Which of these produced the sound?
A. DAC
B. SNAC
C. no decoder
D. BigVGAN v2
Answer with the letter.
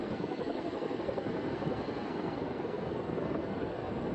B